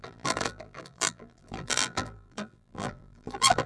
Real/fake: fake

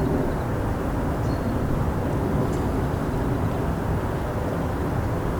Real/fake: real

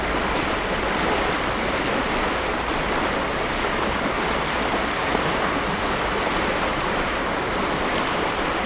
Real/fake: real